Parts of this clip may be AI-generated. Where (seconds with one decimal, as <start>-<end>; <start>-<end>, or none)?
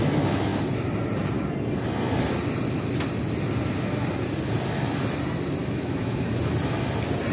5.6-6.3